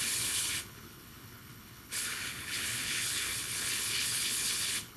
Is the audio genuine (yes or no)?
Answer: no